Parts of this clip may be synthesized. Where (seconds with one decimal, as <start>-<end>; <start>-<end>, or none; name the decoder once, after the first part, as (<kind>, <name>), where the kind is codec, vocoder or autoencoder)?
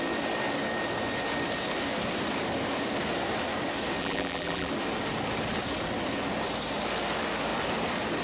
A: 4.0-4.7 (vocoder, BigVGAN v2)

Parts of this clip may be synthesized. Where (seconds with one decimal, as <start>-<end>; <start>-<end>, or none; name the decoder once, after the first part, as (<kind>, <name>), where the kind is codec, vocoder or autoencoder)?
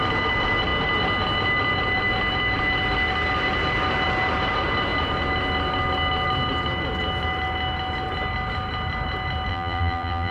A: 9.5-10.3 (vocoder, BigVGAN v2)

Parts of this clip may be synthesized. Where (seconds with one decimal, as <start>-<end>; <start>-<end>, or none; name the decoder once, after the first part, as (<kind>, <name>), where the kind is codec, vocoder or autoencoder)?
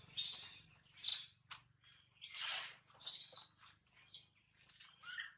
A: 0.0-3.8 (vocoder, BigVGAN v2); 5.0-5.4